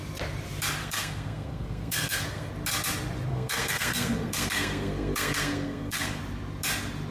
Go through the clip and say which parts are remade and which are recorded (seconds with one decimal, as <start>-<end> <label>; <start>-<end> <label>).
0.0-0.8 recorded; 0.8-2.5 remade; 2.5-3.3 recorded; 3.3-6.2 remade; 6.2-7.1 recorded